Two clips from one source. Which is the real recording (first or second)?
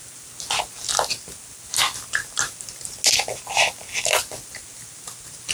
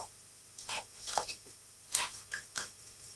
first